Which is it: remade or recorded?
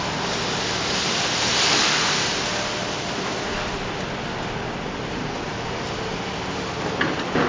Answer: recorded